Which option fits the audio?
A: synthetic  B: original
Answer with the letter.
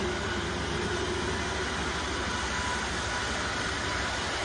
B